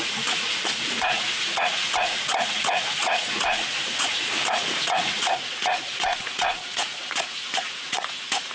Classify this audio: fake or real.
fake